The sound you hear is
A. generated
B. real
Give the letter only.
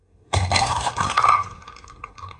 A